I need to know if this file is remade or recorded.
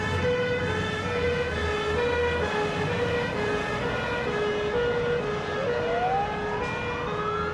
recorded